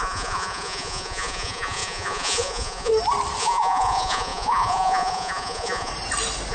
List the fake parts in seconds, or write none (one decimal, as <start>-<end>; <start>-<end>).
0.0-2.9; 3.4-5.9